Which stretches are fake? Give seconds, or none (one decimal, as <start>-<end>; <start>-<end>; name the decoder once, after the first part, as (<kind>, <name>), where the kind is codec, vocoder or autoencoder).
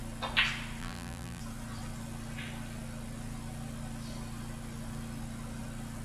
0.8-1.4 (vocoder, BigVGAN v2)